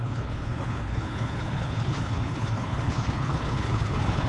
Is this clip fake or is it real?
fake